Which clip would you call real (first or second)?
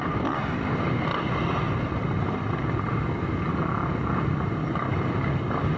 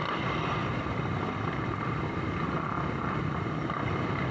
first